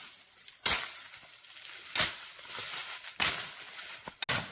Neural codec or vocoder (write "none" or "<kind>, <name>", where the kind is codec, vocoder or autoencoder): none